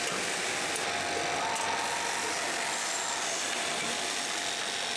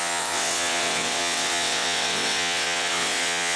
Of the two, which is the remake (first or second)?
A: second